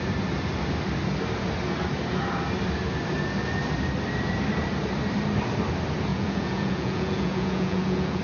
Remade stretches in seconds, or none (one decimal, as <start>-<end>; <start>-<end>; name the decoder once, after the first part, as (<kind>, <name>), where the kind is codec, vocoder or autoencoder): 6.1-8.2 (vocoder, Vocos)